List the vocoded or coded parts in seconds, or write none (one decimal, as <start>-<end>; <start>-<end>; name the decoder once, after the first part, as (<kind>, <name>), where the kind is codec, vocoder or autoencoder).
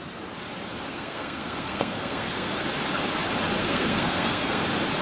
0.9-2.5 (codec, SNAC); 3.6-4.6